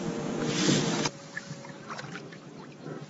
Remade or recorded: recorded